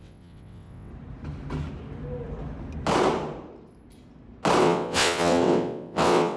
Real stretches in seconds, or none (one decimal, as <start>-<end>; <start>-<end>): 0.9-4.6